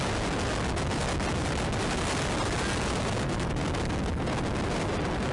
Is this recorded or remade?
recorded